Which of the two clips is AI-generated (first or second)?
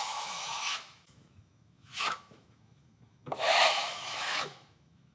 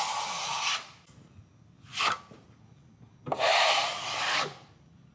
first